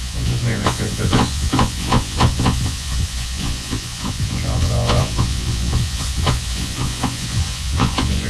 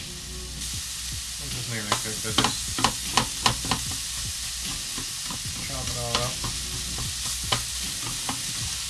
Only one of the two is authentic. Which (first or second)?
second